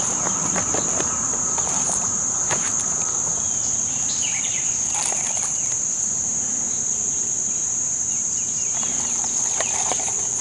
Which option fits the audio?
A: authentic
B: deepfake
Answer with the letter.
B